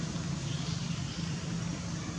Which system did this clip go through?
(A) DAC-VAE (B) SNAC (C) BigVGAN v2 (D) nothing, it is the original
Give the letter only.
D